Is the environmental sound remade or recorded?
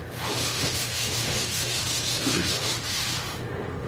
remade